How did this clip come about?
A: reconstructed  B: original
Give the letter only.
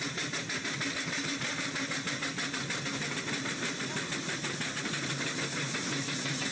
B